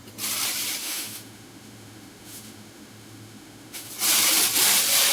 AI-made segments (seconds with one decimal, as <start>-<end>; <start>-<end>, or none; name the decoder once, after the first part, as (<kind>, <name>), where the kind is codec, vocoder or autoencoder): 0.8-3.9 (autoencoder, DAC-VAE)